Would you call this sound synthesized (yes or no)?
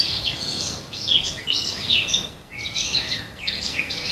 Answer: yes